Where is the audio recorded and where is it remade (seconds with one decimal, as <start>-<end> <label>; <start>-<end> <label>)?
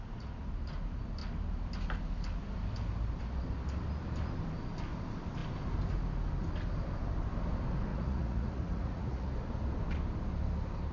0.0-7.9 recorded; 7.9-9.3 remade; 9.3-10.9 recorded